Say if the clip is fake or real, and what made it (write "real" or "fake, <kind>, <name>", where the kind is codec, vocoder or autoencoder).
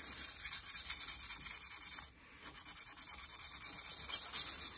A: real